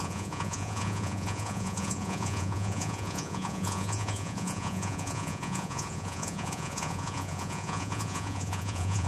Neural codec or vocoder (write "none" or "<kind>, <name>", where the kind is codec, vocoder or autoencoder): vocoder, Vocos